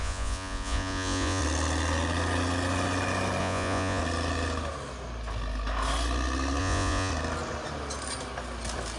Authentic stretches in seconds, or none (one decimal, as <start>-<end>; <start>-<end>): 1.4-3.4; 4.0-6.6; 7.1-9.0